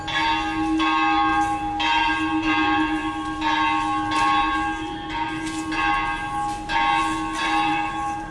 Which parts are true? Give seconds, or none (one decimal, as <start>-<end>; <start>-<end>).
0.0-7.7